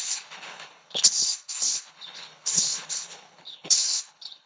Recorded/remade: remade